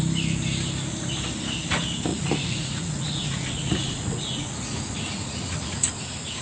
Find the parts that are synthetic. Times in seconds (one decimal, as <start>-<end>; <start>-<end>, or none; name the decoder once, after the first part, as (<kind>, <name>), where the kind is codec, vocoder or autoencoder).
2.1-5.9 (vocoder, Vocos)